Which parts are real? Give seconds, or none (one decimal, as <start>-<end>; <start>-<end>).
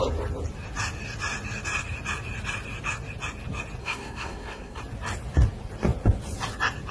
0.0-3.8; 4.8-6.9